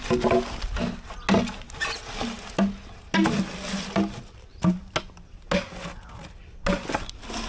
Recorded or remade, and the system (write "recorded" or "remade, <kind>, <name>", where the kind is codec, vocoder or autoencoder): recorded